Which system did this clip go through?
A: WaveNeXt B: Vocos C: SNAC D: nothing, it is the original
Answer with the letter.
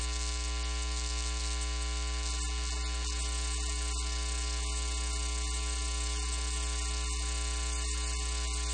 D